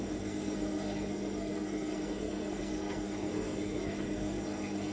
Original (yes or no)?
no